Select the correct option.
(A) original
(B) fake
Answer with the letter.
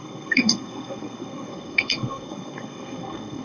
B